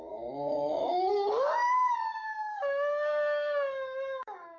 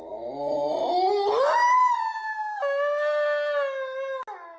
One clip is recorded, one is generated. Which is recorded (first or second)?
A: second